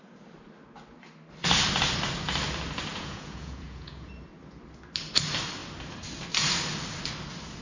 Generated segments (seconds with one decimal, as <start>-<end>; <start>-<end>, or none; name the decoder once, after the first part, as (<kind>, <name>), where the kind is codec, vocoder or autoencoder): 2.9-4.1 (vocoder, Vocos)